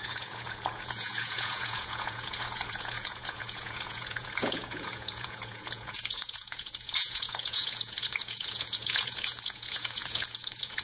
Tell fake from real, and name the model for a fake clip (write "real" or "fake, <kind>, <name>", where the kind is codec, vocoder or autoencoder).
fake, vocoder, Vocos